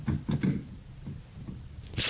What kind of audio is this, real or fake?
real